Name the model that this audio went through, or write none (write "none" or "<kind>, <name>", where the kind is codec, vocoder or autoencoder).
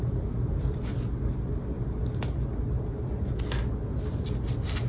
none